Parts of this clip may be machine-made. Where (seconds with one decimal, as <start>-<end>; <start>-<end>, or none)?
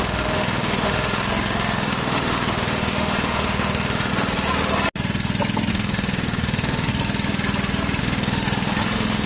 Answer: 0.0-4.1; 5.7-6.9; 8.0-9.3